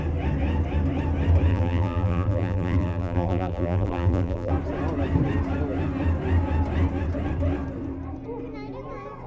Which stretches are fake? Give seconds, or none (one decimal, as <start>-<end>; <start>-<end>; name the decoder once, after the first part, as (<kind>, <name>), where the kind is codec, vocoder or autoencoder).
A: 1.5-4.5 (vocoder, BigVGAN v2)